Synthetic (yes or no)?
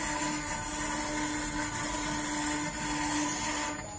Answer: no